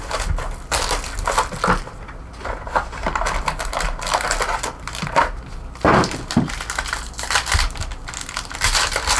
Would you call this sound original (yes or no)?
yes